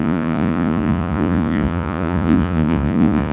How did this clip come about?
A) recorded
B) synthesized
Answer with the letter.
B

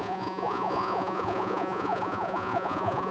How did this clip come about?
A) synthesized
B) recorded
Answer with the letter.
A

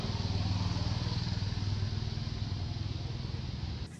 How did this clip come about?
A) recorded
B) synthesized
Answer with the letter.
A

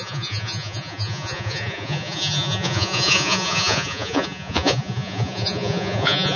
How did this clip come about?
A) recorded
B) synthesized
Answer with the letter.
B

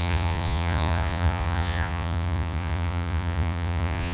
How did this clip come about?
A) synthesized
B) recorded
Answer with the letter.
A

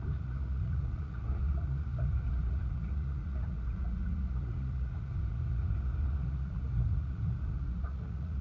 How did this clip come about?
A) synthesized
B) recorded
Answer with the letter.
A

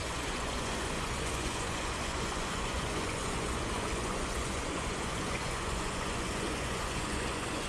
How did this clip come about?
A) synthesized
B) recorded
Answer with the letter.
A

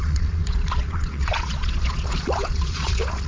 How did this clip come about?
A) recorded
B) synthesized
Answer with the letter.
B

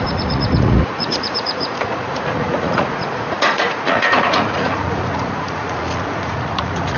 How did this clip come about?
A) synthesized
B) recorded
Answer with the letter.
A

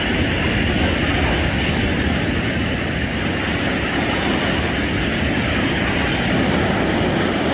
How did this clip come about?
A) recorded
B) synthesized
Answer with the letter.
A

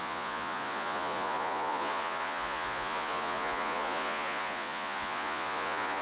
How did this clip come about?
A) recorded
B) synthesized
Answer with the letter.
B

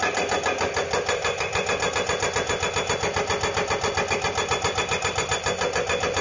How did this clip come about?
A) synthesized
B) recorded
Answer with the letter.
B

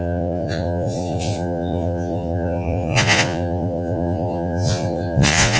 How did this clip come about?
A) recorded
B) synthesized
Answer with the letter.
B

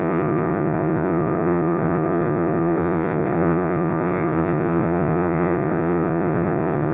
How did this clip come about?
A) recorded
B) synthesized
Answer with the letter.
B